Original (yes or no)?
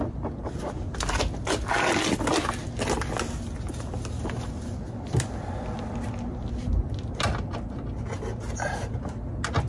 yes